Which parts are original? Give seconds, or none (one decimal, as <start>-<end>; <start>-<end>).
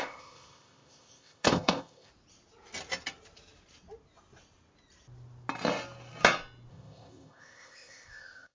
2.1-6.7